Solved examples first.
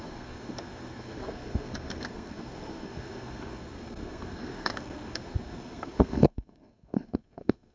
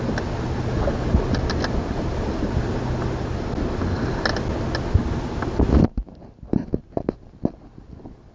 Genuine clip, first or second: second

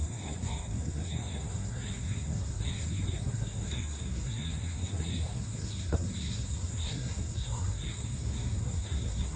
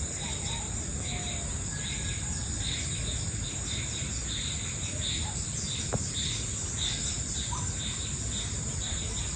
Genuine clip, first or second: second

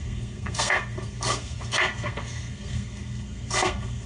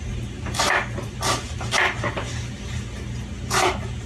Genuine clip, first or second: second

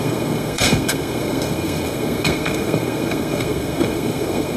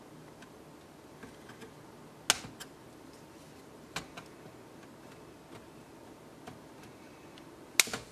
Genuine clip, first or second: second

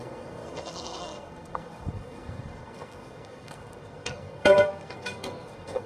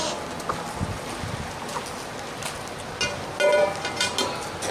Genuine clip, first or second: second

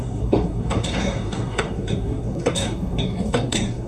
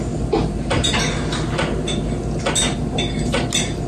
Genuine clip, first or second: second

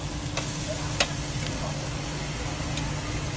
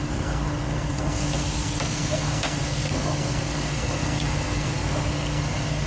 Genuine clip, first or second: first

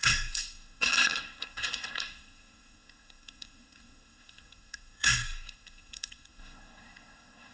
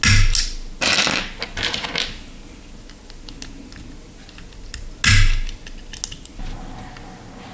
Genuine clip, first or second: second